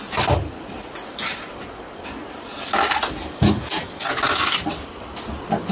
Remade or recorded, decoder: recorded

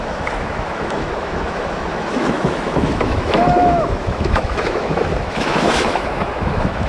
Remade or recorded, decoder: remade, autoencoder, DAC-VAE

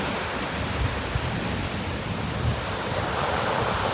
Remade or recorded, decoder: recorded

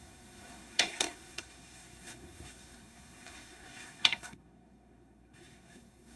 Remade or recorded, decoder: remade, codec, SNAC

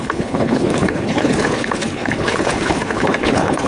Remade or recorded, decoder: remade, codec, HILCodec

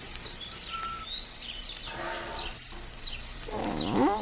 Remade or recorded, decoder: recorded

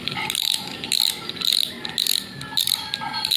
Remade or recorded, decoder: recorded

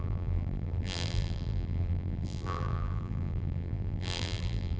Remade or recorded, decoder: remade, vocoder, BigVGAN v2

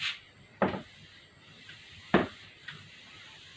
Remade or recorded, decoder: recorded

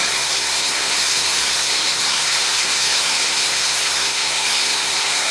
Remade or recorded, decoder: remade, codec, SNAC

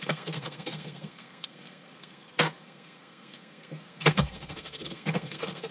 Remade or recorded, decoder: remade, codec, SNAC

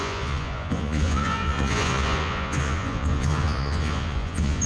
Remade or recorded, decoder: remade, vocoder, Vocos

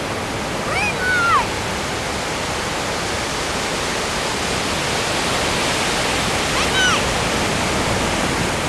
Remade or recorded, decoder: recorded